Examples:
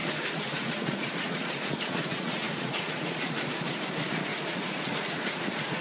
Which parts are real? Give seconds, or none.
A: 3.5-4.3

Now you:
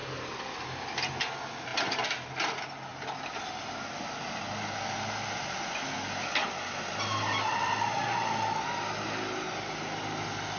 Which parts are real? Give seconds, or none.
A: 0.0-10.6

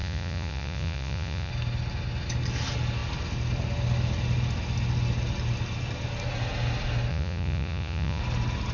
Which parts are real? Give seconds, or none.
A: 1.5-7.1; 8.2-8.7